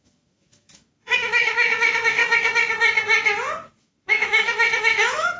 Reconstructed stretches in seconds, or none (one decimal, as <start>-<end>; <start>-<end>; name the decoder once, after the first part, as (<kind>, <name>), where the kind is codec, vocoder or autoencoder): 0.0-2.2 (autoencoder, DAC-VAE); 3.8-5.4